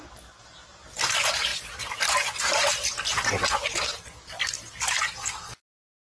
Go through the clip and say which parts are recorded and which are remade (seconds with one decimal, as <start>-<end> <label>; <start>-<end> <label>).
0.0-6.1 recorded